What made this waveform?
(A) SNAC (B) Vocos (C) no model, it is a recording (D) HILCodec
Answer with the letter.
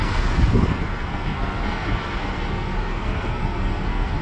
A